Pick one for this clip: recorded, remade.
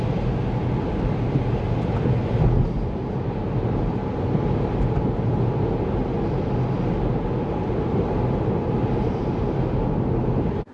recorded